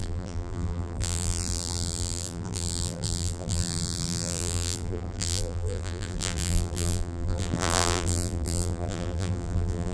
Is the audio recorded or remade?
remade